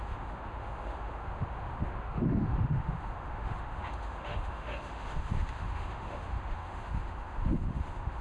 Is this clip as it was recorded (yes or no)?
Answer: no